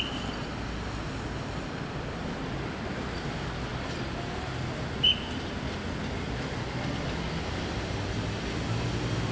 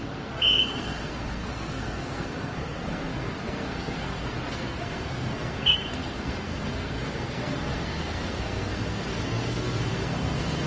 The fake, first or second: second